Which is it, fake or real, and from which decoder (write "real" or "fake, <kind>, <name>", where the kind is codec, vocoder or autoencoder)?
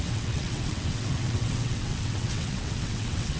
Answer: fake, vocoder, WaveNeXt